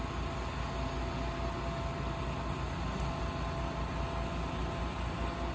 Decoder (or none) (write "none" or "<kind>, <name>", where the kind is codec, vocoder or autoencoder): none